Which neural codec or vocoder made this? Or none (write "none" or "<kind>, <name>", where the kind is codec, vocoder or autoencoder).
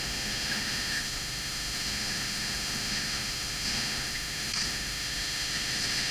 autoencoder, DAC-VAE